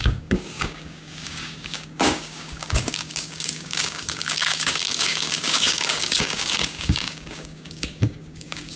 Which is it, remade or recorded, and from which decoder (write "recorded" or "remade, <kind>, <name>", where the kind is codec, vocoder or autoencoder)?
remade, codec, DAC